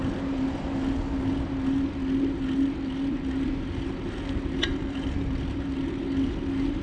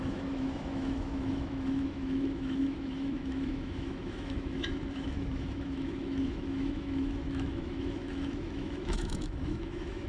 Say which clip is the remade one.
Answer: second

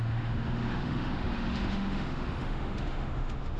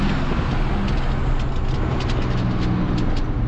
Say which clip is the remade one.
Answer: first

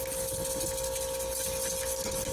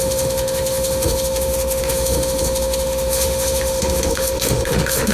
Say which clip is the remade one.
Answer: second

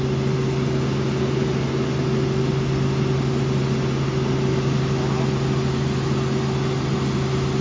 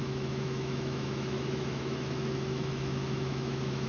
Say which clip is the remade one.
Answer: second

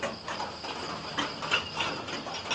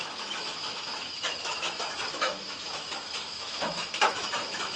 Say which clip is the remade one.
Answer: second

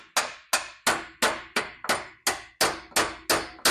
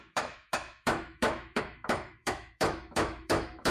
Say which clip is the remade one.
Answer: second